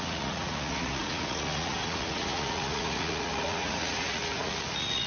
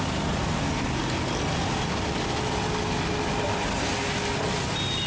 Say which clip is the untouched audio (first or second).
second